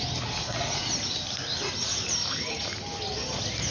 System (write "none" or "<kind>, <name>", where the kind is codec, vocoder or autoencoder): none